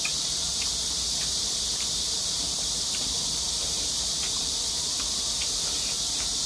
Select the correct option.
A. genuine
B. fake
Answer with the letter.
B